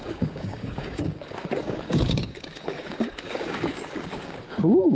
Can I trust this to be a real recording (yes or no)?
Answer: no